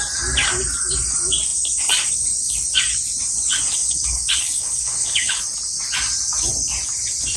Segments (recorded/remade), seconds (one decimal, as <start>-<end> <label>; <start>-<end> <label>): 0.0-3.8 recorded; 3.8-5.4 remade; 5.4-7.4 recorded